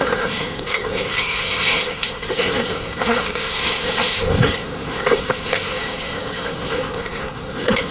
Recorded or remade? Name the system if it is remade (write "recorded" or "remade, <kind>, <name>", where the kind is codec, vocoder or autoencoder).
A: remade, codec, SNAC